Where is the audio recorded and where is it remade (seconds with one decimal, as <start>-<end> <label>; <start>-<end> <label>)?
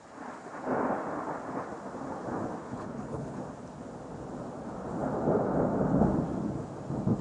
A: 0.0-2.6 recorded; 2.6-3.4 remade; 3.4-7.2 recorded